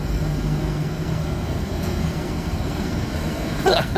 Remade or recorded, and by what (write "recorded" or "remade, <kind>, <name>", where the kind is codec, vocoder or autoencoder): remade, codec, SNAC